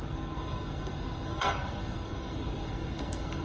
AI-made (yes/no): yes